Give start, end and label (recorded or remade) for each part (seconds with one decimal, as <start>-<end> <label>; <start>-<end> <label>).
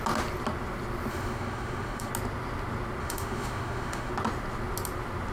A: 0.0-1.1 recorded; 1.1-2.1 remade; 2.1-3.0 recorded; 3.0-4.1 remade; 4.1-5.3 recorded